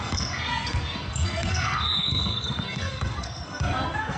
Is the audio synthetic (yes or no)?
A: yes